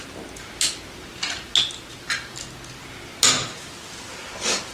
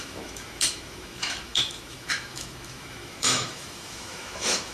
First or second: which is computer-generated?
second